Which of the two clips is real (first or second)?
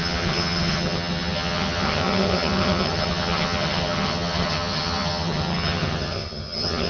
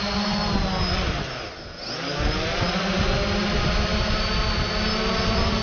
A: second